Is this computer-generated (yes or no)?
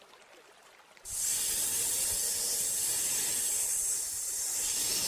no